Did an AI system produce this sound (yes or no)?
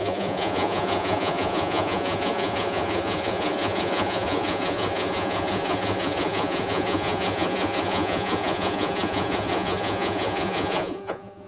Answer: yes